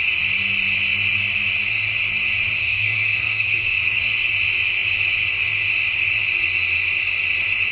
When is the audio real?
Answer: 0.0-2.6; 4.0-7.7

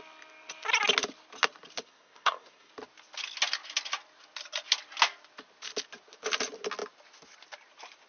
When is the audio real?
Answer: 0.0-1.8; 2.7-8.1

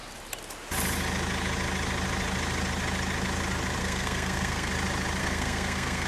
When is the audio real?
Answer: 0.0-3.8; 4.7-5.2

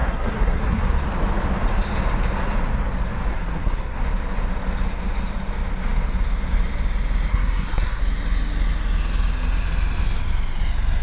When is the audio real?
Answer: 0.9-3.3; 4.0-7.3; 8.0-11.0

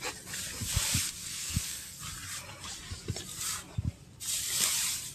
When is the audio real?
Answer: 0.0-1.2; 2.0-5.1

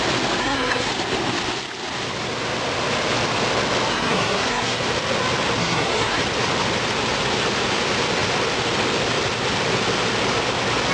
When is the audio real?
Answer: 0.0-0.4; 0.9-3.9; 4.8-5.6; 6.2-10.9